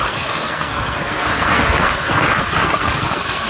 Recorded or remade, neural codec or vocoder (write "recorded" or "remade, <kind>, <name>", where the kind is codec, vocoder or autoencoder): remade, codec, SNAC